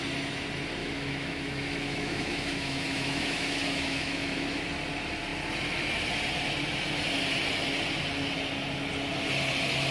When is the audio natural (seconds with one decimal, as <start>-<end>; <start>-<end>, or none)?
0.0-0.8; 4.6-9.9